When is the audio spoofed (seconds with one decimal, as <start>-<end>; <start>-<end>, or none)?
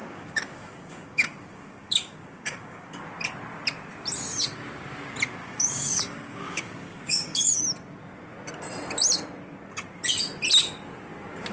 0.0-2.9; 5.4-7.6